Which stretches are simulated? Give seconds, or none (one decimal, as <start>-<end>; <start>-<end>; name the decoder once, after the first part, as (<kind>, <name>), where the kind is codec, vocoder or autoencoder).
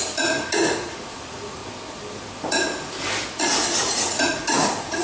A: 0.0-1.6 (vocoder, Vocos); 3.8-5.0